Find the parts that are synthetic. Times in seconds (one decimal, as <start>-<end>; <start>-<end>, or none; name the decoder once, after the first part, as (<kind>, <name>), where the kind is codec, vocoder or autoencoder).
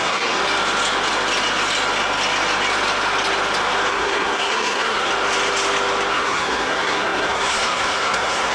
0.0-0.4 (codec, SNAC); 3.9-5.1; 6.1-8.5